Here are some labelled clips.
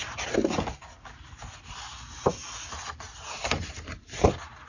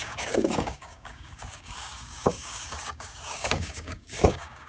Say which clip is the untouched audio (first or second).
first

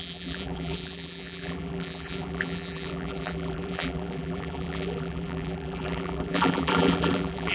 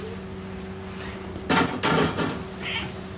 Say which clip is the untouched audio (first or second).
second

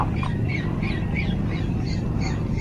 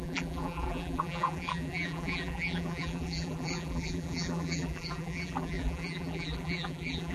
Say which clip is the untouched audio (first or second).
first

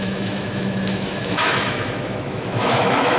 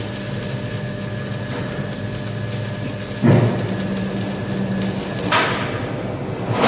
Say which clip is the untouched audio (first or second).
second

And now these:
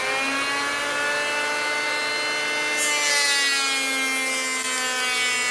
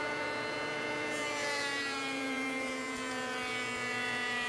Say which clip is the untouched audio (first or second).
first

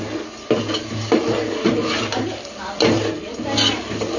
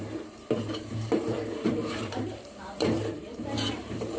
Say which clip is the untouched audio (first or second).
first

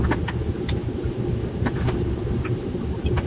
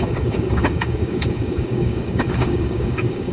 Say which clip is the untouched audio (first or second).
first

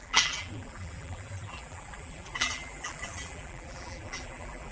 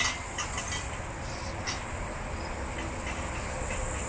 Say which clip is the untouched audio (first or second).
second